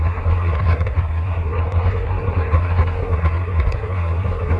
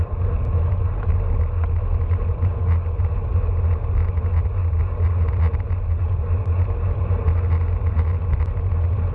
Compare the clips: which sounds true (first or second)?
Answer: second